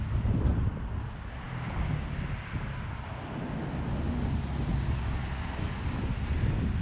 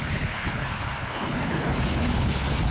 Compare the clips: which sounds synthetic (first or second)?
second